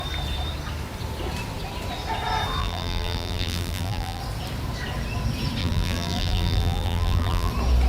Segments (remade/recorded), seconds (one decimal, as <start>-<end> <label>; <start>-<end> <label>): 0.0-2.6 recorded; 2.6-4.2 remade; 4.2-5.6 recorded; 5.6-7.5 remade; 7.5-7.9 recorded